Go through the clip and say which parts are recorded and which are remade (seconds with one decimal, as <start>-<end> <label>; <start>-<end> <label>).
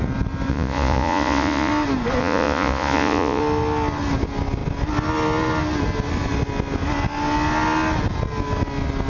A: 0.0-0.5 recorded; 0.5-1.7 remade; 1.7-2.2 recorded; 2.2-3.4 remade; 3.4-9.1 recorded